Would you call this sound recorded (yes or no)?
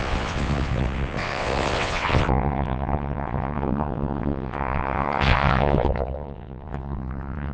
no